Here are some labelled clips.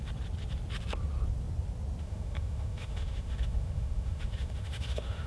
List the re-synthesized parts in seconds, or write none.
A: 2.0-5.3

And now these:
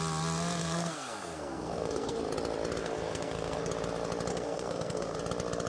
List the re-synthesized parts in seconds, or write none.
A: 0.6-2.2; 2.8-3.7; 4.3-5.2

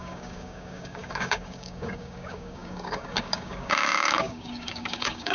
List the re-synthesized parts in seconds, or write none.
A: 0.0-5.3

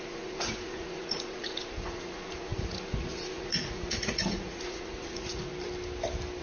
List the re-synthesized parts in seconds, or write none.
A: 0.0-5.5

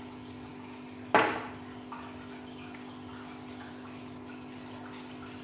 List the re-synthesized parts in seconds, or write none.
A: none